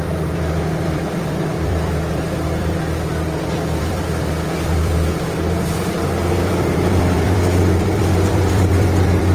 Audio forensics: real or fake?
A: fake